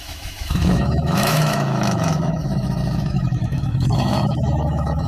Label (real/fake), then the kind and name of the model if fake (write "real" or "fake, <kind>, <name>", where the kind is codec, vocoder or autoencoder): fake, autoencoder, DAC-VAE